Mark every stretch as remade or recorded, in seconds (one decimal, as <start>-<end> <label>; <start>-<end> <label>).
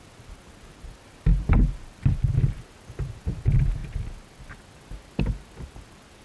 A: 0.0-6.2 recorded